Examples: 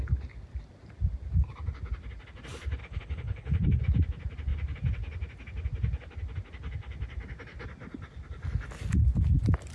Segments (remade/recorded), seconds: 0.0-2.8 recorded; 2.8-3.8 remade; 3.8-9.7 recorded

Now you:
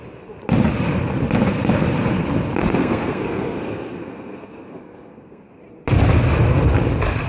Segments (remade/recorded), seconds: 0.0-2.8 recorded; 2.8-5.4 remade; 5.4-7.3 recorded

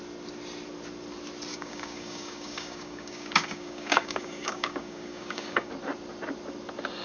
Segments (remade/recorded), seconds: 0.0-1.5 recorded; 1.5-5.7 remade; 5.7-7.0 recorded

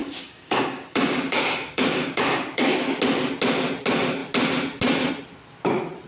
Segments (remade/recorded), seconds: 0.0-3.0 remade; 3.0-6.1 recorded

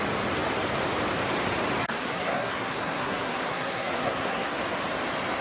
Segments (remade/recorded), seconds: 0.0-1.8 recorded; 1.8-4.6 remade; 4.6-5.4 recorded

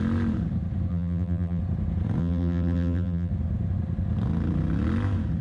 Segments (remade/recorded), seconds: 0.0-0.9 recorded; 0.9-1.6 remade; 1.6-2.2 recorded; 2.2-3.3 remade; 3.3-5.4 recorded

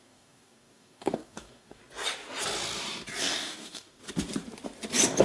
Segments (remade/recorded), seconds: 0.0-1.8 remade; 1.8-3.2 recorded; 3.2-4.0 remade; 4.0-5.2 recorded

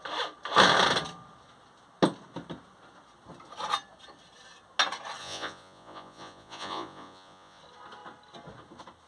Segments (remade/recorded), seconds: 0.0-5.2 recorded; 5.2-7.6 remade; 7.6-9.1 recorded